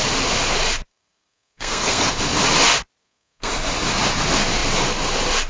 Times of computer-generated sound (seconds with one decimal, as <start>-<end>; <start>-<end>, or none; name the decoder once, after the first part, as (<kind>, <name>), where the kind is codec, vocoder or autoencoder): 0.9-2.1 (codec, SNAC); 3.0-3.5